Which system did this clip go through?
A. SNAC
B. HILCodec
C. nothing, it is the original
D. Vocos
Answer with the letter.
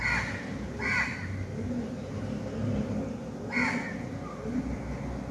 C